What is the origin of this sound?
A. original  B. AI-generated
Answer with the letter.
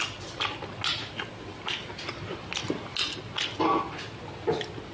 A